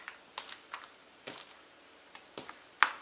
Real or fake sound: real